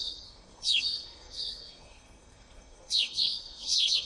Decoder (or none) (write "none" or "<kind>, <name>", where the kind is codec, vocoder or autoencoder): codec, SNAC